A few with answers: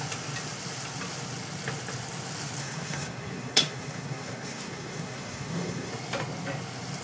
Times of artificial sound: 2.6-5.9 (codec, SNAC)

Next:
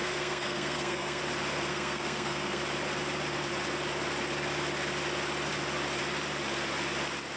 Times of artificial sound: 0.0-1.2 (codec, SNAC); 1.7-2.6

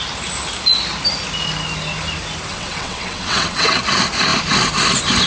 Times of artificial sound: 2.5-3.8 (vocoder, WaveNeXt)

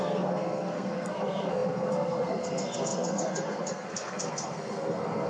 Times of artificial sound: 0.0-5.3 (codec, SNAC)

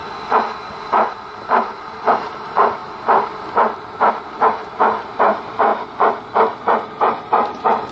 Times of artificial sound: 0.9-2.8 (vocoder, BigVGAN v2); 4.1-5.7; 6.6-7.9

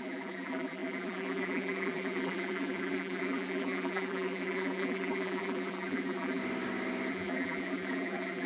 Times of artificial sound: 0.0-6.4 (vocoder, BigVGAN v2); 7.1-8.5

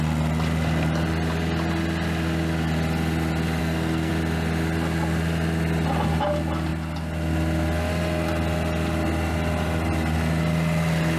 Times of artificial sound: 3.6-4.1 (codec, SNAC)